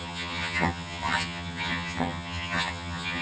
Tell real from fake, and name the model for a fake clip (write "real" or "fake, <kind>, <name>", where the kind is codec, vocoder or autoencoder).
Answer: fake, vocoder, HiFi-GAN